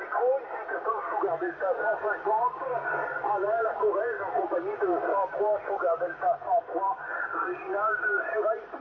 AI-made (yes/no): no